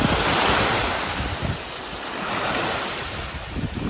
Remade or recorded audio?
recorded